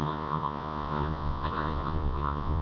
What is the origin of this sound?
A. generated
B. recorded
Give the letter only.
A